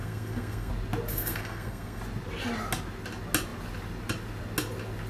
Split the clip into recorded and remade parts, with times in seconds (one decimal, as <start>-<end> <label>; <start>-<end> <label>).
0.0-0.7 remade; 0.7-1.1 recorded; 1.1-2.0 remade; 2.0-5.1 recorded